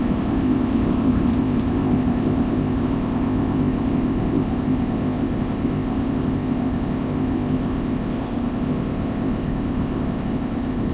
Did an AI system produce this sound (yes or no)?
yes